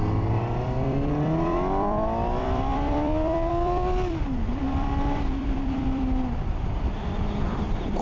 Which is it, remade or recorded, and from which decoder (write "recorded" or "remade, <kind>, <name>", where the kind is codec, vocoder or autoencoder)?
remade, vocoder, BigVGAN v2